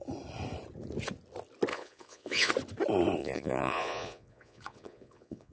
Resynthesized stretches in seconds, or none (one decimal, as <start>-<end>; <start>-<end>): 1.7-2.5; 3.2-5.5